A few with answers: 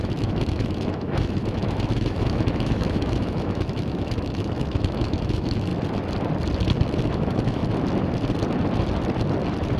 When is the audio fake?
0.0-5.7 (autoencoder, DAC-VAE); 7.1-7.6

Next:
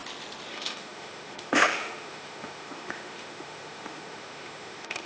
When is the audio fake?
0.5-5.1 (autoencoder, DAC-VAE)

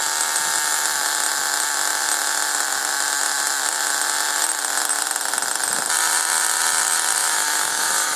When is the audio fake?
7.2-8.2 (autoencoder, DAC-VAE)

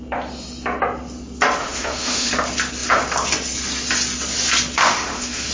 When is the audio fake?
1.6-2.3 (autoencoder, DAC-VAE); 4.8-5.5

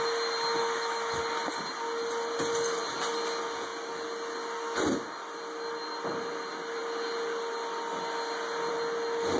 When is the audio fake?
0.6-1.2 (autoencoder, DAC-VAE)

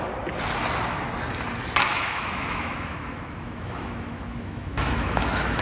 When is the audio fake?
1.9-5.6 (autoencoder, DAC-VAE)

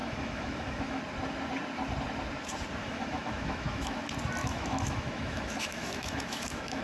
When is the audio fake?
0.0-1.0 (autoencoder, DAC-VAE); 2.8-4.0; 4.4-6.8